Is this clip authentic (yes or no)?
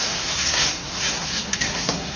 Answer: no